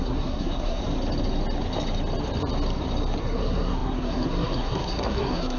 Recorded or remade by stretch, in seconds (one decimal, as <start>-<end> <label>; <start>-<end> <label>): 0.0-0.8 remade; 0.8-3.2 recorded; 3.2-5.6 remade